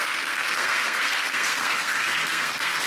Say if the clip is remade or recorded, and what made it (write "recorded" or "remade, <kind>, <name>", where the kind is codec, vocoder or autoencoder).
remade, codec, SNAC